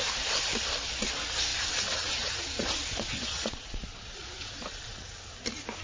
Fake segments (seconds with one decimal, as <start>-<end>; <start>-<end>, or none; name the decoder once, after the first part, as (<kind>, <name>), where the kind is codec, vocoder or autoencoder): 1.5-5.0 (vocoder, Vocos)